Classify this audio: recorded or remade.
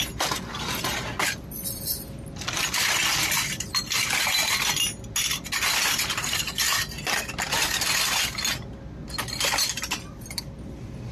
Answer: recorded